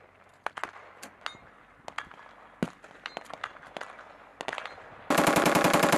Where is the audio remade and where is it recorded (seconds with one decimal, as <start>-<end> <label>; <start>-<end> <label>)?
0.0-6.0 recorded